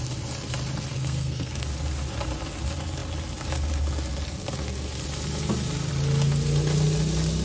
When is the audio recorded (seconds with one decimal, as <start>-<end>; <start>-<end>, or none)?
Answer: 0.0-0.9; 1.6-7.4